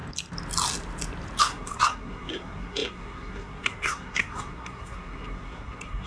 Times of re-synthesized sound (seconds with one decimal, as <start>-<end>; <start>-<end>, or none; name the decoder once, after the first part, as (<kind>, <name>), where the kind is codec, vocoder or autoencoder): 1.4-6.1 (codec, SNAC)